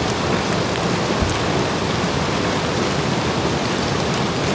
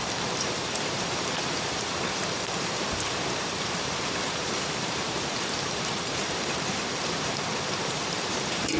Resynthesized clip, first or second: second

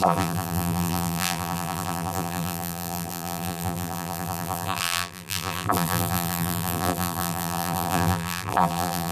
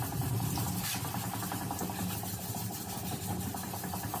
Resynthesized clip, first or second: first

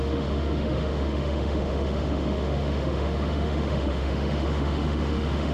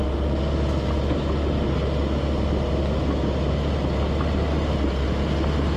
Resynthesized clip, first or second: first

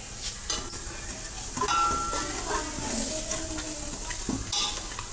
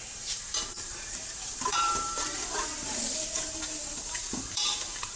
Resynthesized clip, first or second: second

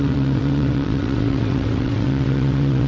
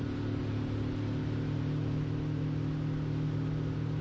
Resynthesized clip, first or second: first